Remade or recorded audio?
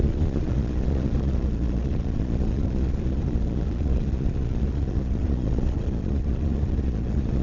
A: remade